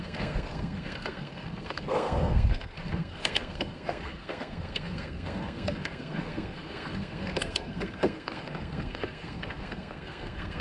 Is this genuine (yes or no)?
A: no